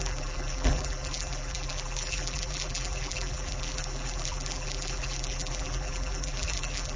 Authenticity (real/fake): fake